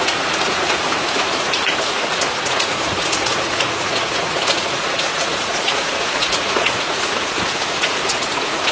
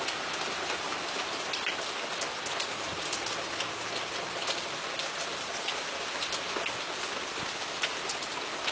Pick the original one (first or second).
second